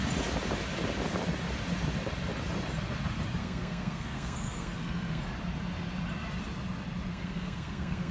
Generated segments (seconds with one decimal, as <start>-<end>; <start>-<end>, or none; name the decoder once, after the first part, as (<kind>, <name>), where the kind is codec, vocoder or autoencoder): 3.4-5.2 (codec, SNAC); 7.1-8.1